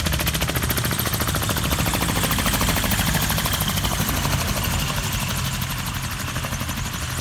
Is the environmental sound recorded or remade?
recorded